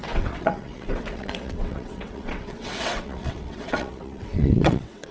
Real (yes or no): no